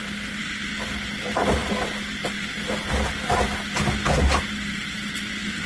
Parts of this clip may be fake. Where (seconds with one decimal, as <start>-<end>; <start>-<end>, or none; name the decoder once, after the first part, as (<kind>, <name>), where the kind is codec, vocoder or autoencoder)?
none